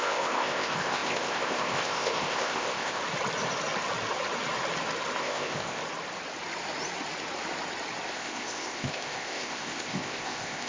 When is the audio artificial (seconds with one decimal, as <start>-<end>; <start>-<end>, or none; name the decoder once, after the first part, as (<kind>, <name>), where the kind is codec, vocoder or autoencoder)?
0.0-3.0 (codec, ZipCodec); 5.2-5.8; 8.1-10.7